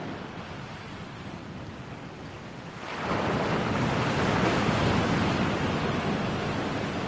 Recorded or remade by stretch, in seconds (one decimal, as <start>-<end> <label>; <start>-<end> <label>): 0.0-7.1 recorded